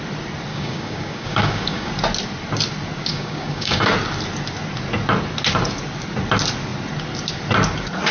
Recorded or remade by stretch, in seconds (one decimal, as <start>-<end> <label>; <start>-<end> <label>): 0.0-0.5 recorded; 0.5-1.9 remade; 1.9-3.1 recorded; 3.1-3.9 remade; 3.9-8.1 recorded

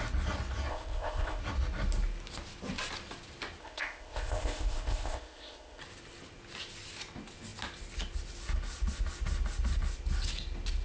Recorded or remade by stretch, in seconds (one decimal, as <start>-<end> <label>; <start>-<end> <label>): 0.0-0.7 recorded; 0.7-1.4 remade; 1.4-3.6 recorded; 3.6-5.8 remade; 5.8-10.8 recorded

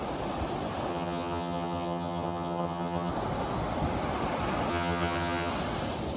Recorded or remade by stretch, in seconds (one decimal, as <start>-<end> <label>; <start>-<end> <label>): 0.0-0.9 recorded; 0.9-3.1 remade; 3.1-4.7 recorded; 4.7-5.5 remade; 5.5-6.2 recorded

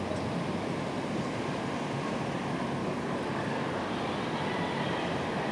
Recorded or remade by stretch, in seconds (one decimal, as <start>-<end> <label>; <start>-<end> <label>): 0.0-2.8 recorded; 2.8-3.9 remade; 3.9-5.5 recorded

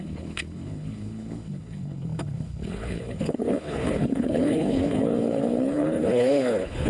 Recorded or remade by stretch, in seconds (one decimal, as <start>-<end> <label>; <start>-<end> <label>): 0.0-6.9 remade